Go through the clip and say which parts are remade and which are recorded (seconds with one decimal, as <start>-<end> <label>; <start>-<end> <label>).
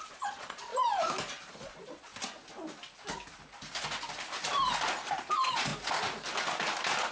0.0-0.7 remade; 0.7-1.5 recorded; 1.5-2.1 remade; 2.1-5.3 recorded; 5.3-5.7 remade; 5.7-7.1 recorded